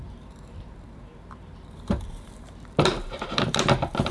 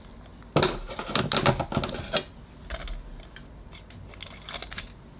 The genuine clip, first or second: second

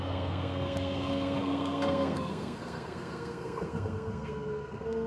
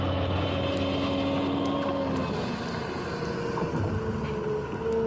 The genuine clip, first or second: second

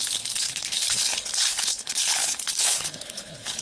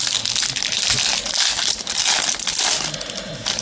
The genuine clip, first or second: second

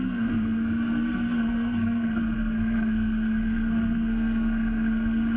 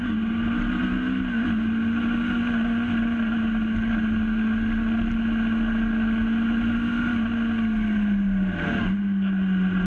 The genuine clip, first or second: second